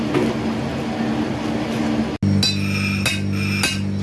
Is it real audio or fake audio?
real